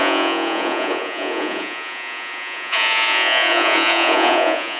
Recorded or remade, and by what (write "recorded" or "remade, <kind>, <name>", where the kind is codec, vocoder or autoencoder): remade, vocoder, Vocos